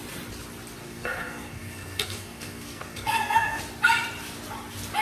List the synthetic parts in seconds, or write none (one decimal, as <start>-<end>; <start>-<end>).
0.8-3.6